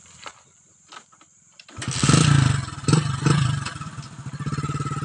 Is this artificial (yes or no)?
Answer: yes